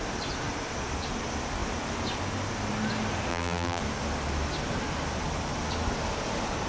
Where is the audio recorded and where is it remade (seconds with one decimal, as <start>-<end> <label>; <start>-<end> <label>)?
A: 0.0-3.3 recorded; 3.3-3.8 remade; 3.8-6.7 recorded